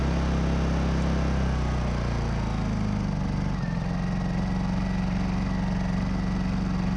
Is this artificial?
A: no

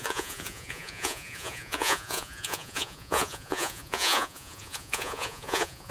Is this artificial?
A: yes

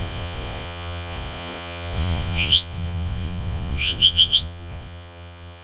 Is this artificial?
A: yes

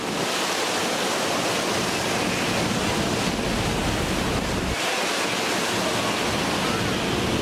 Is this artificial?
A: no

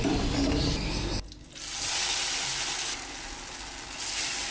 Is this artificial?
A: no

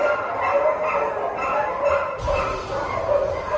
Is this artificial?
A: no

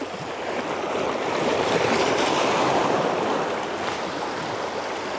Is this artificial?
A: no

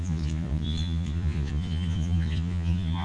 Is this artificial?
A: yes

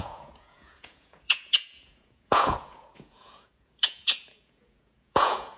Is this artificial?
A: yes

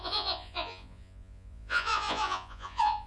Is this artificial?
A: yes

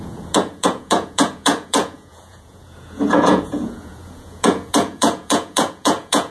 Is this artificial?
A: yes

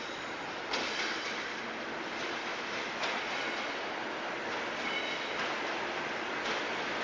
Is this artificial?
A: no